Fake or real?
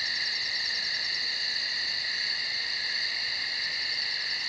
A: real